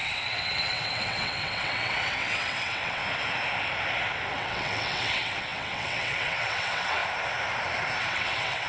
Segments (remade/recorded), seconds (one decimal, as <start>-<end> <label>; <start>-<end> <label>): 0.0-3.0 remade; 3.0-4.3 recorded; 4.3-7.0 remade; 7.0-8.0 recorded; 8.0-8.7 remade